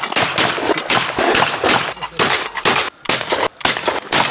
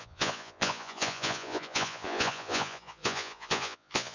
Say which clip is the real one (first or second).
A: first